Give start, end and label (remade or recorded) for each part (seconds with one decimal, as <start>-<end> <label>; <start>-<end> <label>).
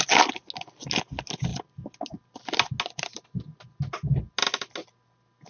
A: 0.0-5.5 recorded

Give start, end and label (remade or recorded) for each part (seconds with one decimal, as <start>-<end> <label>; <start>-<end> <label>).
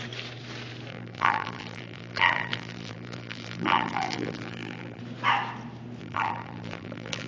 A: 0.0-0.9 recorded; 0.9-5.0 remade; 5.0-6.0 recorded; 6.0-7.3 remade